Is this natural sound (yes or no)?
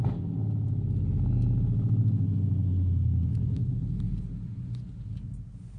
yes